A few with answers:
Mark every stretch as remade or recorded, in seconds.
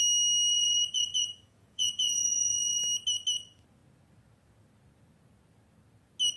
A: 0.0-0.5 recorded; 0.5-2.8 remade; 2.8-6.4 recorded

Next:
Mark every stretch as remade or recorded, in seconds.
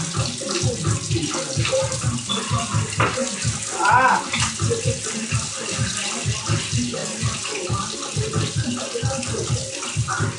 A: 0.0-10.4 recorded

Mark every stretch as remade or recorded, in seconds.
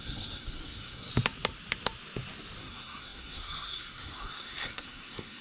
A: 0.0-1.1 remade; 1.1-2.6 recorded; 2.6-5.4 remade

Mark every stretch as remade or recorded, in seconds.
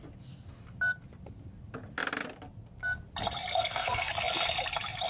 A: 0.0-3.5 recorded; 3.5-4.1 remade; 4.1-5.1 recorded